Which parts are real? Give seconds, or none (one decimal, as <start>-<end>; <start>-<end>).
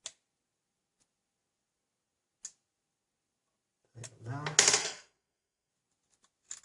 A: 0.0-4.8; 5.7-6.6